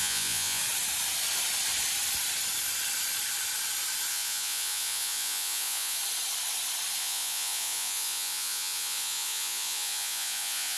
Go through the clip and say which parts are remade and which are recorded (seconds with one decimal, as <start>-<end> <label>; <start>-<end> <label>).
0.0-0.6 remade; 0.6-4.1 recorded; 4.1-6.0 remade; 6.0-7.0 recorded; 7.0-10.8 remade